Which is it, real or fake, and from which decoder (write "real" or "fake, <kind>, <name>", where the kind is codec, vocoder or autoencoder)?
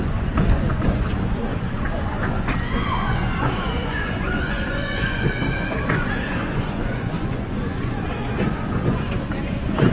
fake, vocoder, Vocos